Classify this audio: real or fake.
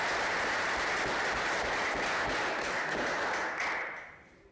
real